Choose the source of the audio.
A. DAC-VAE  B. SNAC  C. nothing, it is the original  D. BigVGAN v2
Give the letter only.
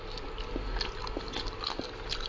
C